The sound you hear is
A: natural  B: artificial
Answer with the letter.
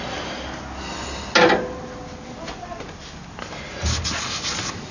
A